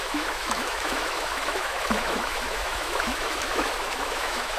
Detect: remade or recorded remade